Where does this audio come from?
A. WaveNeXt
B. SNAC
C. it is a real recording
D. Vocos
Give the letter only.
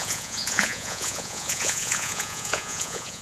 D